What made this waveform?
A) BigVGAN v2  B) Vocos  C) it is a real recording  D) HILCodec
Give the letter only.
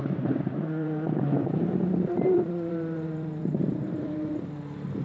A